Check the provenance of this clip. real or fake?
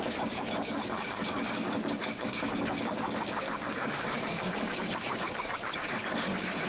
fake